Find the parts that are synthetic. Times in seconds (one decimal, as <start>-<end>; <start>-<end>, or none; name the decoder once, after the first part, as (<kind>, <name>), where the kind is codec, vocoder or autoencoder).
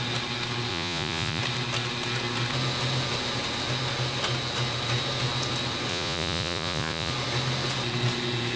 0.7-1.4 (vocoder, Vocos); 5.9-7.1